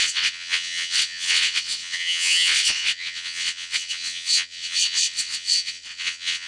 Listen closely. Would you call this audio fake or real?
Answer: fake